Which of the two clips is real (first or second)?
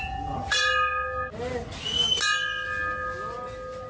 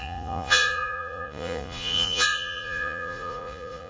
first